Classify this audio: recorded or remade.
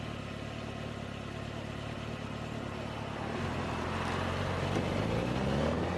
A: recorded